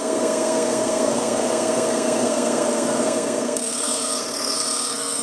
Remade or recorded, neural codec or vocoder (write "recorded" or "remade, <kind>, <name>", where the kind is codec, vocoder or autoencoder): remade, codec, SNAC